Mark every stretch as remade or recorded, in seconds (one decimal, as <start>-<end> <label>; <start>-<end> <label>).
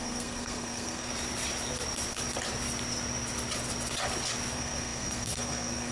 0.0-1.1 remade; 1.1-4.5 recorded; 4.5-5.9 remade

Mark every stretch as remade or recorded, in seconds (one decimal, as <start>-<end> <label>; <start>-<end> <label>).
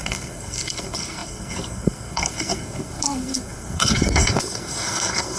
0.0-5.4 remade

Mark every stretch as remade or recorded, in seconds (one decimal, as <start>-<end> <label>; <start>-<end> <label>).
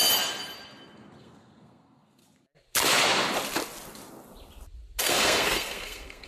0.0-1.2 recorded; 1.2-2.2 remade; 2.2-5.0 recorded; 5.0-6.3 remade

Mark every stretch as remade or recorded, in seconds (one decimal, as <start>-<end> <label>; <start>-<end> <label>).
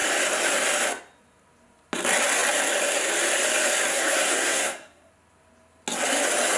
0.0-3.9 recorded; 3.9-5.1 remade; 5.1-6.6 recorded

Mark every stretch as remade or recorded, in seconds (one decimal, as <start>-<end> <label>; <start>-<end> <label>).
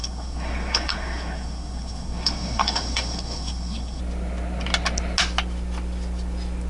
0.0-4.0 remade; 4.0-6.7 recorded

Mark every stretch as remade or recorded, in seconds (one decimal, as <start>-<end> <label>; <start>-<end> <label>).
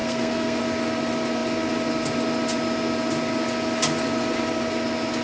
0.0-0.6 remade; 0.6-5.2 recorded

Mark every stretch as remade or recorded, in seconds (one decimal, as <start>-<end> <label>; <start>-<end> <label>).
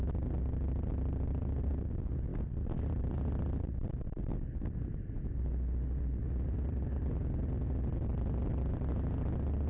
0.0-9.7 recorded